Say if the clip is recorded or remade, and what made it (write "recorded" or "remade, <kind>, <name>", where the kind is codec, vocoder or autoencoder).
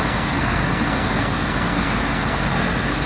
remade, codec, SNAC